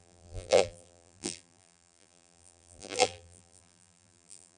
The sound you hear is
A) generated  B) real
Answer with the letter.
A